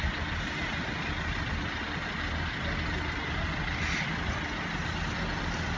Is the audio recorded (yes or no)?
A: yes